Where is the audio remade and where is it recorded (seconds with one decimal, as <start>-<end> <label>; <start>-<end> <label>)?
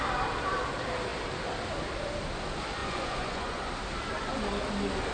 0.0-2.8 recorded; 2.8-3.7 remade; 3.7-5.1 recorded